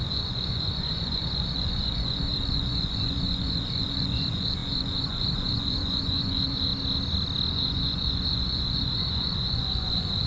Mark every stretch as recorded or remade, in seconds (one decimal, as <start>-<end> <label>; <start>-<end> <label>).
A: 0.0-6.7 remade; 6.7-7.5 recorded; 7.5-10.3 remade